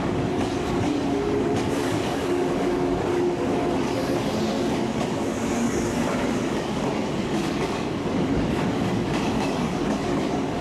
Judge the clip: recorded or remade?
remade